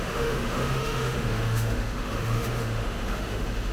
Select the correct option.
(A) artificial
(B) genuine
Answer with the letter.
A